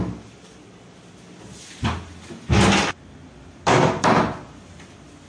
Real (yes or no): yes